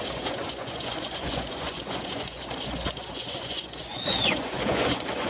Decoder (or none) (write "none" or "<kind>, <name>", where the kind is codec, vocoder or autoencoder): vocoder, Vocos